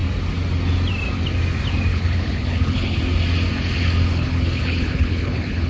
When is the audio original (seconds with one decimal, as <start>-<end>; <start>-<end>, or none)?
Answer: 0.0-1.9; 3.0-4.1